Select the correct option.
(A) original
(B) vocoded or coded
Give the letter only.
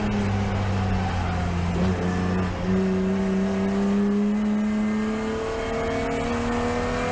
A